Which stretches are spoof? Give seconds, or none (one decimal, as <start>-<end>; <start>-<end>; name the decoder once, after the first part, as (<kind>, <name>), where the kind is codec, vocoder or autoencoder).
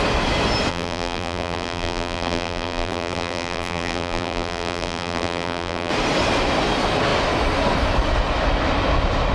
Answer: 0.7-5.9 (vocoder, BigVGAN v2)